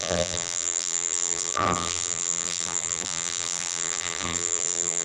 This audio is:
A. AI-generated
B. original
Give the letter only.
A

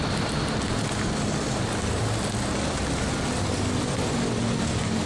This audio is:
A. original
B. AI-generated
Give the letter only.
A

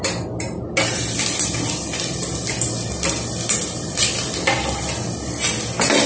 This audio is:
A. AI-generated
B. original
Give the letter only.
B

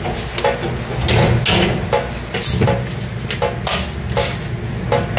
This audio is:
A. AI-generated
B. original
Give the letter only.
B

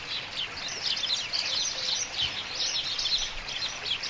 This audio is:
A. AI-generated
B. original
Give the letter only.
B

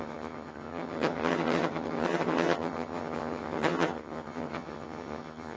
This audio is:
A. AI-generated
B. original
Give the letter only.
A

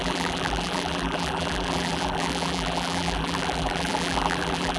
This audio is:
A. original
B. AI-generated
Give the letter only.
B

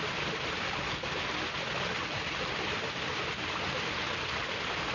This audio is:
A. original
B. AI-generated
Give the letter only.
A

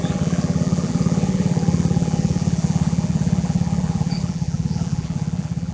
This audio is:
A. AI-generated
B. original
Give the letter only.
A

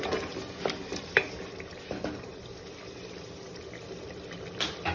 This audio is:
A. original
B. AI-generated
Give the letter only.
A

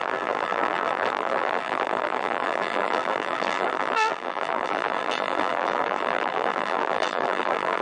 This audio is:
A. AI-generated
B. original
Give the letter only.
A